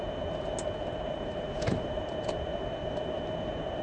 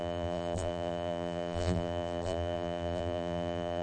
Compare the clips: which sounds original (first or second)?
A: first